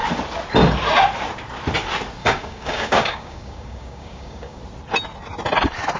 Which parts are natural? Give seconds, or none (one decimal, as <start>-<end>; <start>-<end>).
0.0-2.2; 4.6-6.0